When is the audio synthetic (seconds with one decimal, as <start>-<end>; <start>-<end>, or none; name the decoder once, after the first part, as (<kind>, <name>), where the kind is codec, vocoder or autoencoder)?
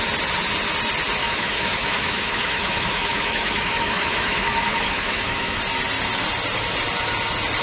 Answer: 1.2-5.6 (autoencoder, DAC-VAE)